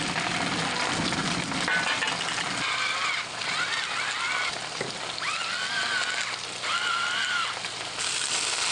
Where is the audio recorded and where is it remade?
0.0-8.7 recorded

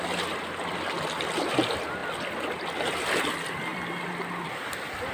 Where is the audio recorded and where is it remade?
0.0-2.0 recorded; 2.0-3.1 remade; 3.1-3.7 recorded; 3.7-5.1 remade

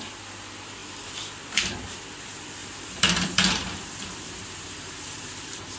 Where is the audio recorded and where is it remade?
0.0-2.6 recorded; 2.6-5.8 remade

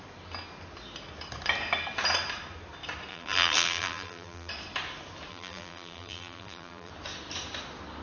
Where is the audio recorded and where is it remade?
0.0-3.1 recorded; 3.1-4.5 remade; 4.5-5.3 recorded; 5.3-6.9 remade; 6.9-8.0 recorded

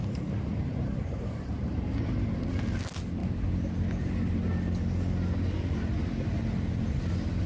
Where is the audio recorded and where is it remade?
0.0-2.6 remade; 2.6-7.5 recorded

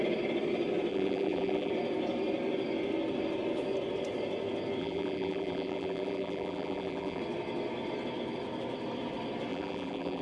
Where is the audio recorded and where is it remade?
0.0-0.9 recorded; 0.9-1.7 remade; 1.7-4.8 recorded; 4.8-7.2 remade; 7.2-9.5 recorded; 9.5-10.2 remade

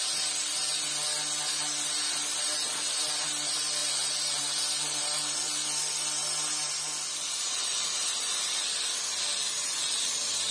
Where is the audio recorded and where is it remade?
0.0-10.5 recorded